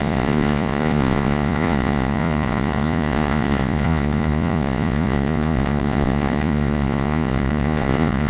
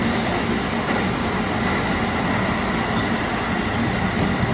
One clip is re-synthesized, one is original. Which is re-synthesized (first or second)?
first